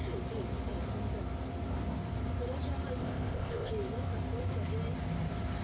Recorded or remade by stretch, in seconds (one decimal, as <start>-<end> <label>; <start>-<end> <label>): 0.0-3.0 recorded; 3.0-3.7 remade; 3.7-5.6 recorded